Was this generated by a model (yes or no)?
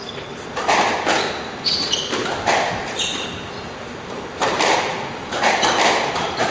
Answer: no